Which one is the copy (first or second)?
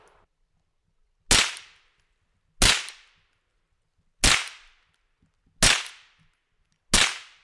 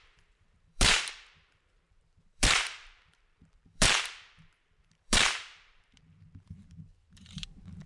second